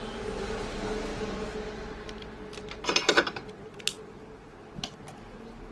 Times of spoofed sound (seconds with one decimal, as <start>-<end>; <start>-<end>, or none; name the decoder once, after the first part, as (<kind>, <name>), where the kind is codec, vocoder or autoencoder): none